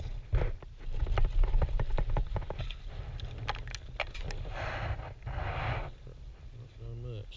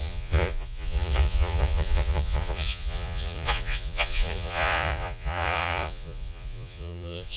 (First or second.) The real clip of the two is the first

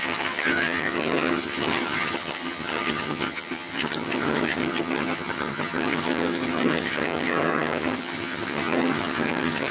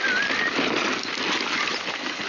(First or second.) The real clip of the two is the second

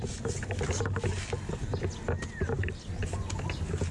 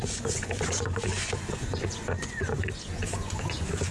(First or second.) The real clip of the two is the first